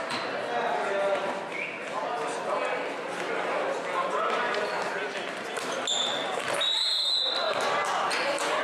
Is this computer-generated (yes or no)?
no